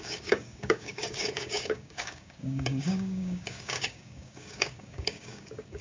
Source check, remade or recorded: remade